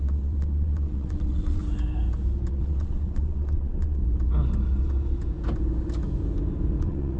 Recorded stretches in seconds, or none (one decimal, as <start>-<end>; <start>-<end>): 1.6-2.5; 4.0-6.8